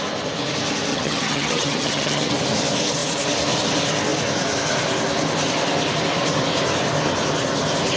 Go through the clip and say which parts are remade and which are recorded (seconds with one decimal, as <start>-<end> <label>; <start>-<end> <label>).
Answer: 0.0-0.9 recorded; 0.9-2.3 remade; 2.3-8.0 recorded